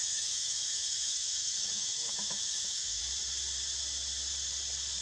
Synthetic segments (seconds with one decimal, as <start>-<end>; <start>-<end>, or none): 0.0-3.0